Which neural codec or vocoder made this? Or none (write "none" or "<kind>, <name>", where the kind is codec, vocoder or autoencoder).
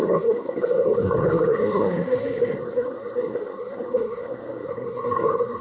codec, SNAC